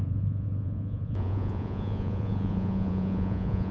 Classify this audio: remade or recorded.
remade